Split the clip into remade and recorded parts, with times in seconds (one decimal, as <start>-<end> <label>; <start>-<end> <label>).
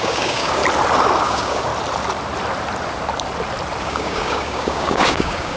0.0-0.6 remade; 0.6-1.2 recorded; 1.2-1.7 remade; 1.7-3.8 recorded; 3.8-5.6 remade